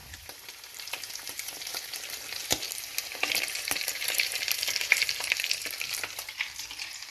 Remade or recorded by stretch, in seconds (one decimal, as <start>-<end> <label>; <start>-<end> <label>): 0.0-7.1 remade